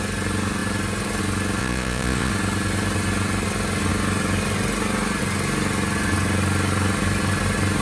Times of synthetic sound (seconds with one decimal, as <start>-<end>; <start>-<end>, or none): 1.6-2.3